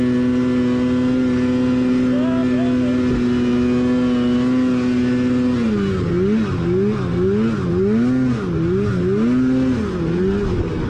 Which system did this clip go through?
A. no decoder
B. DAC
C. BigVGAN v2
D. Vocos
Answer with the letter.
A